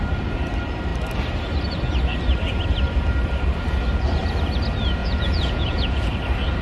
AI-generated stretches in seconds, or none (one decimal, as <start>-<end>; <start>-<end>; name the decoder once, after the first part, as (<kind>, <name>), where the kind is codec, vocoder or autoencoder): 5.0-6.1 (vocoder, Vocos)